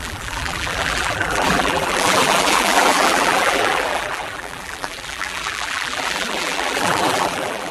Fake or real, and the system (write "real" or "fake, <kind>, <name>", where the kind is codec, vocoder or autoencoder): fake, vocoder, BigVGAN v2